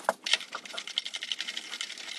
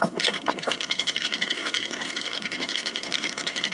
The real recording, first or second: first